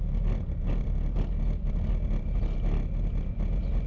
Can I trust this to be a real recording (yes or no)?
yes